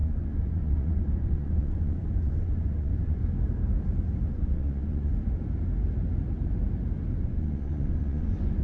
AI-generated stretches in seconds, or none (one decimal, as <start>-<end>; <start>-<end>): 0.0-3.2; 4.3-5.1; 7.2-8.6